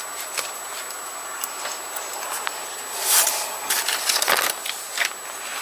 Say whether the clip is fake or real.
real